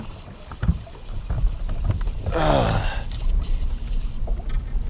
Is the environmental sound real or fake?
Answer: real